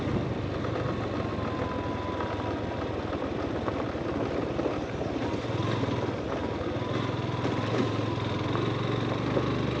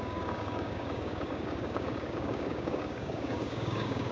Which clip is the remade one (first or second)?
second